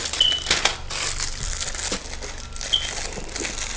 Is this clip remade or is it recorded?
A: recorded